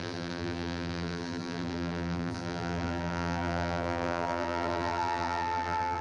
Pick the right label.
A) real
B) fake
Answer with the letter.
B